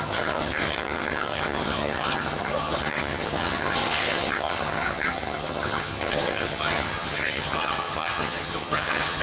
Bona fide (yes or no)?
no